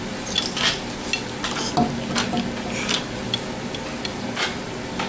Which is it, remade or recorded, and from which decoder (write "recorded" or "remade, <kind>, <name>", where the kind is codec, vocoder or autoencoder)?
recorded